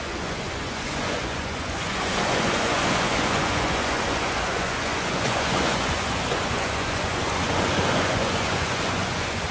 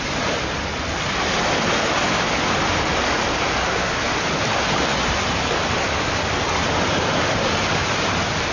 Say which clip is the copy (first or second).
first